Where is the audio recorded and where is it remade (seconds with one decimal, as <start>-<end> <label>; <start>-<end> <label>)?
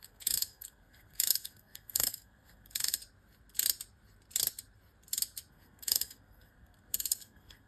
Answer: 0.0-3.0 remade; 3.0-5.5 recorded; 5.5-7.7 remade